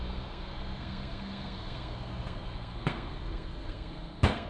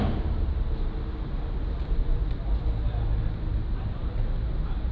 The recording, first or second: second